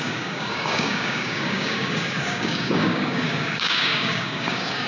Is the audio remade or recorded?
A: remade